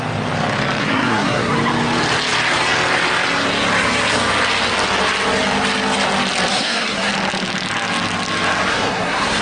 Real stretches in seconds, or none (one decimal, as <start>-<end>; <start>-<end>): 0.0-0.8; 1.5-6.5; 7.1-8.7